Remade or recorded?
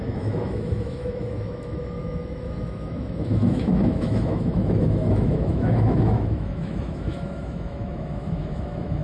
remade